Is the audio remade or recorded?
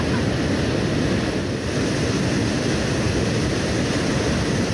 recorded